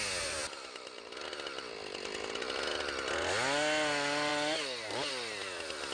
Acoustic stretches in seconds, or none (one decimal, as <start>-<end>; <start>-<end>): 0.0-5.9